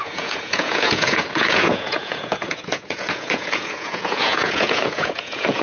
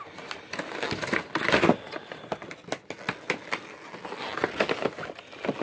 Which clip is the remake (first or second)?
first